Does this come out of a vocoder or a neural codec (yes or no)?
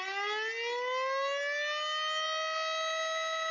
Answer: no